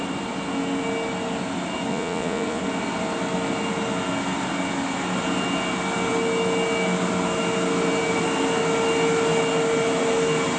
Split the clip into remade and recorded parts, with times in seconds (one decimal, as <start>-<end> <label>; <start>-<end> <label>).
0.0-1.9 recorded; 1.9-2.6 remade; 2.6-10.6 recorded